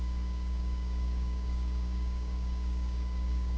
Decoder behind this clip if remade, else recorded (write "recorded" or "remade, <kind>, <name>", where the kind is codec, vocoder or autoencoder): remade, codec, DAC